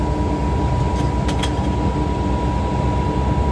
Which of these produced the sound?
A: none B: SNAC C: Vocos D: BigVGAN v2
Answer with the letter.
A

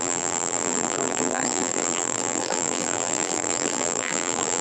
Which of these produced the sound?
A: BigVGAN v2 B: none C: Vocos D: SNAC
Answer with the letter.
A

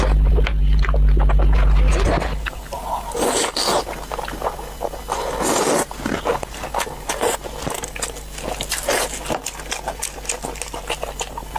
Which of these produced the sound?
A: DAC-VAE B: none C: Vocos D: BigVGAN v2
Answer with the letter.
B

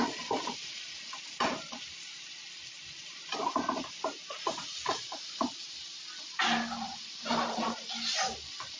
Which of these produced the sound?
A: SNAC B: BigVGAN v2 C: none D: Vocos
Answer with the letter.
C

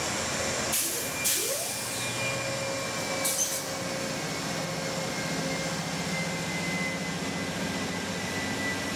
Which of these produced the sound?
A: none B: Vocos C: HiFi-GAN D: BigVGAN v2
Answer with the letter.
A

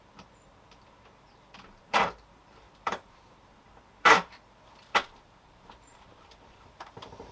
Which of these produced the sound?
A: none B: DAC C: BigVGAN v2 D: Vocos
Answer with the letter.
C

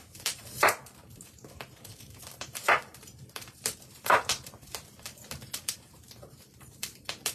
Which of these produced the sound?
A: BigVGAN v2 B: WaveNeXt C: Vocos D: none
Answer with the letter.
A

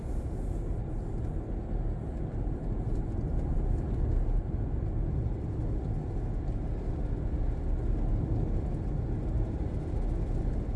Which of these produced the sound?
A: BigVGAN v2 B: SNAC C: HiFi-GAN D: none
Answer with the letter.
D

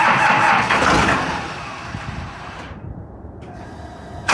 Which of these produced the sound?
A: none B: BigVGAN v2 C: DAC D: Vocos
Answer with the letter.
B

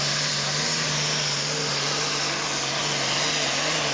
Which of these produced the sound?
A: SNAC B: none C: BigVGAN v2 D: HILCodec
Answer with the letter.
B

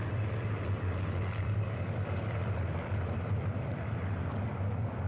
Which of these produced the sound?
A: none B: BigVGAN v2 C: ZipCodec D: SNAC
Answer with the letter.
B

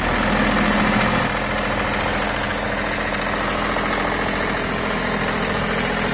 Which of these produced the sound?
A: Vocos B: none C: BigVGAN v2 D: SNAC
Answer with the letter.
B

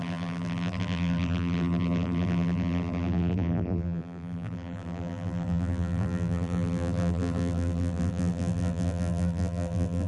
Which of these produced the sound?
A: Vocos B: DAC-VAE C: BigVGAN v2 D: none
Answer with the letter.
C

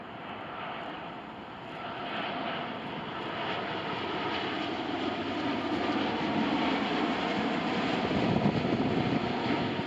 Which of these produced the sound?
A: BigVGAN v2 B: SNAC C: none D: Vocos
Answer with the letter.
C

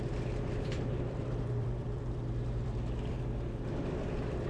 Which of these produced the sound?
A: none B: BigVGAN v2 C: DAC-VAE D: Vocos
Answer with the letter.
B